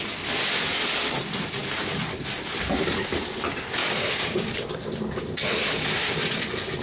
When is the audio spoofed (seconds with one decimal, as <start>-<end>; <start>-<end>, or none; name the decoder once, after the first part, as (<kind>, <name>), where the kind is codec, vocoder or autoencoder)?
3.8-4.5 (codec, DAC)